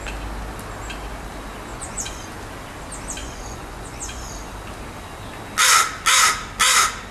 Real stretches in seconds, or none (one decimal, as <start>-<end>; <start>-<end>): 0.0-1.7; 2.3-3.2; 4.3-7.1